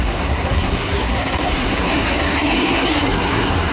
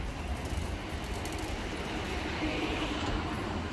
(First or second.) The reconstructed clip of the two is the first